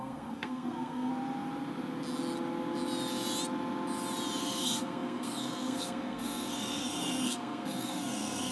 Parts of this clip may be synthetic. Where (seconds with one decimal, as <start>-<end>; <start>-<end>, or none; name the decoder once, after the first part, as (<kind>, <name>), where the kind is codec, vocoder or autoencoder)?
0.0-1.1 (codec, SNAC); 4.4-8.5